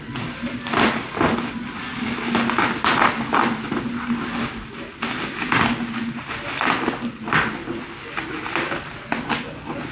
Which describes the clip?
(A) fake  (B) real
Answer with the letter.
B